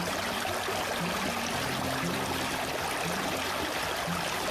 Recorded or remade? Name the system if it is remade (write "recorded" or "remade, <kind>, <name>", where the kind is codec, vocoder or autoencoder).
recorded